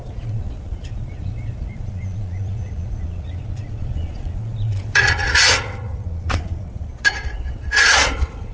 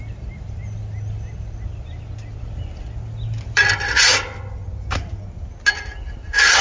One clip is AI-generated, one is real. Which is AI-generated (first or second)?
first